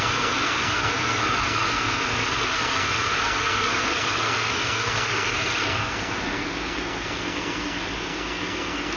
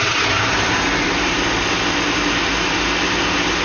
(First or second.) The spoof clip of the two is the first